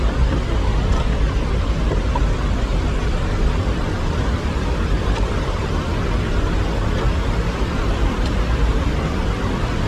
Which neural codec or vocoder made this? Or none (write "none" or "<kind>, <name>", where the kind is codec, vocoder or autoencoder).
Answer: none